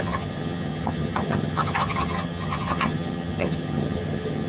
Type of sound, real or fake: fake